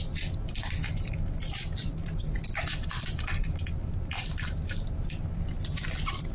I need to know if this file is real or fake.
fake